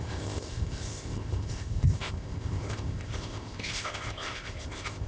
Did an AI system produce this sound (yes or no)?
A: yes